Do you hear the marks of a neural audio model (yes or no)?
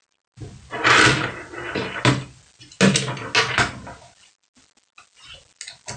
no